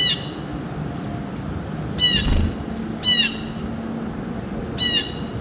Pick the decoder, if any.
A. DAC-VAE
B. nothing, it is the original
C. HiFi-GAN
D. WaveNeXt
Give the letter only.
B